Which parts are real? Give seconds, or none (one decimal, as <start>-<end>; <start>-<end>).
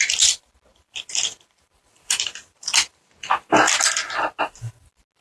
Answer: 0.0-0.7; 3.8-5.2